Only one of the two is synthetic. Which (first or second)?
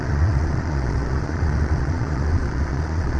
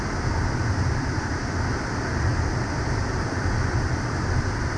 first